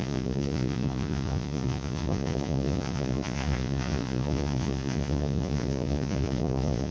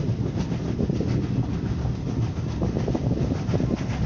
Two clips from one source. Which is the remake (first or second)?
first